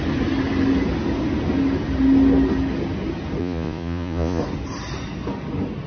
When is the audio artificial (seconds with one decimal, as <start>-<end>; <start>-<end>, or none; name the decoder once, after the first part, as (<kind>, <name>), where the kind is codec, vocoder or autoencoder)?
3.4-4.4 (vocoder, Vocos)